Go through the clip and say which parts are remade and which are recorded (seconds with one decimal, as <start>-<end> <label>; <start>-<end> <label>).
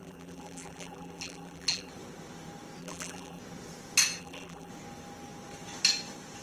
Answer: 0.0-1.9 remade; 1.9-2.8 recorded; 2.8-3.4 remade; 3.4-4.2 recorded; 4.2-4.7 remade; 4.7-6.4 recorded